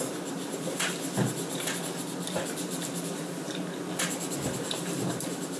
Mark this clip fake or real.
real